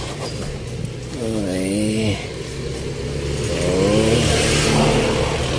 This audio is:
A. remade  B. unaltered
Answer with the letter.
B